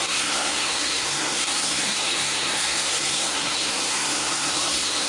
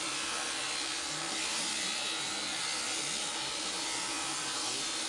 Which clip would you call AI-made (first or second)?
first